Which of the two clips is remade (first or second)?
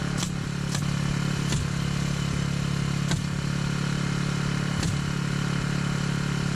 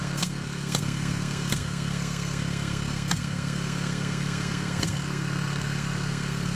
second